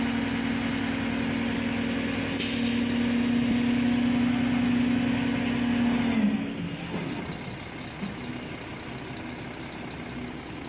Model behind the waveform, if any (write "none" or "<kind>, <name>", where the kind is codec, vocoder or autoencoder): none